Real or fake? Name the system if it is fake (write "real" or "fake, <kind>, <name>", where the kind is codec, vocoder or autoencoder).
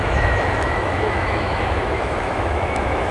fake, autoencoder, DAC-VAE